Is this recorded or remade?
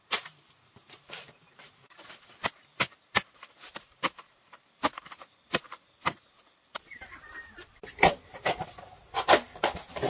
remade